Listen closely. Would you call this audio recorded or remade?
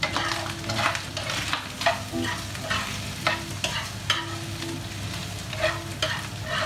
recorded